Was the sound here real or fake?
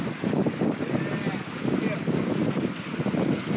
real